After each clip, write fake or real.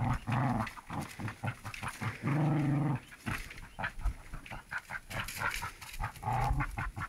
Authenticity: real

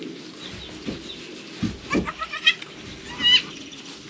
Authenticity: real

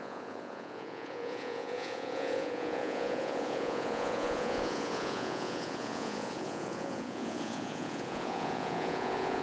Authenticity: fake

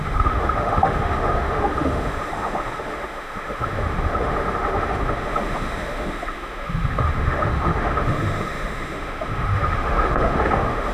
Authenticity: fake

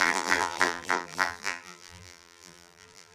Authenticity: fake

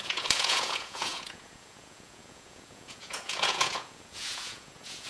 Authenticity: fake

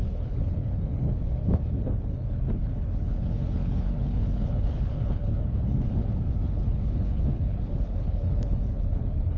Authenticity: fake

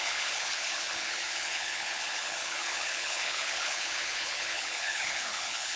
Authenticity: fake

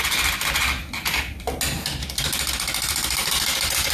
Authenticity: real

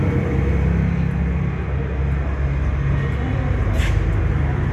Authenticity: real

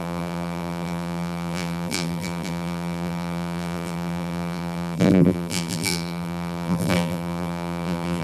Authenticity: fake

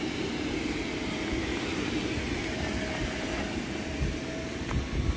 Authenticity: real